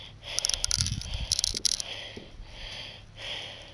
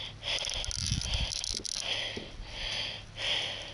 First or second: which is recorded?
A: second